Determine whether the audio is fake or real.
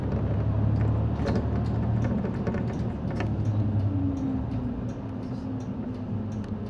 real